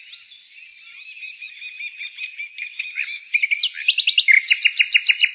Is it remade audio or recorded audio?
recorded